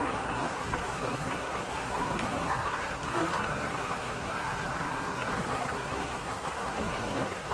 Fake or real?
fake